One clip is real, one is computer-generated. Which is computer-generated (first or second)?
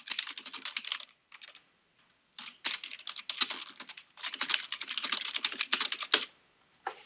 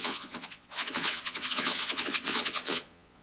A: second